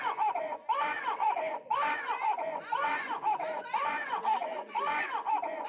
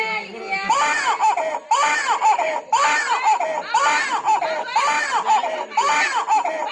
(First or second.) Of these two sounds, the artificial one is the first